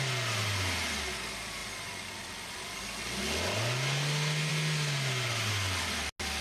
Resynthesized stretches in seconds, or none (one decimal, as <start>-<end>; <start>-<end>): none